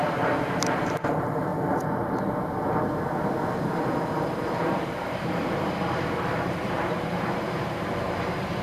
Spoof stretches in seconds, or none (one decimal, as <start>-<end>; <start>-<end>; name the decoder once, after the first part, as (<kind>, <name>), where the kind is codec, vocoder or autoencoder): 0.0-1.5 (vocoder, BigVGAN v2); 3.5-8.6